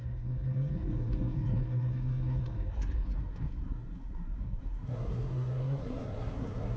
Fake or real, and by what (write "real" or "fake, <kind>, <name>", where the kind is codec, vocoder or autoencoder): fake, codec, SNAC